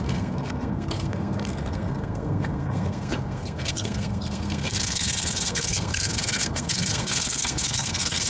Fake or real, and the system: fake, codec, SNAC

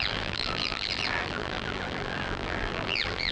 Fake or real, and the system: fake, vocoder, BigVGAN v2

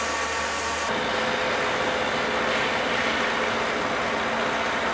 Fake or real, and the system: real